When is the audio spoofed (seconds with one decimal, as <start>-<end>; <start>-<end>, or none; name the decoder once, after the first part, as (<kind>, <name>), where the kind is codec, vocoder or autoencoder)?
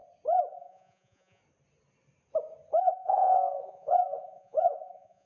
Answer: 0.5-1.4 (vocoder, Vocos); 2.8-5.3